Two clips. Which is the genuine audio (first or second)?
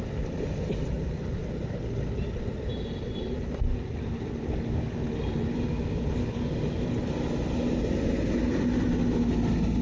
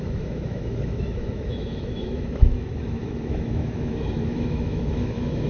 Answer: first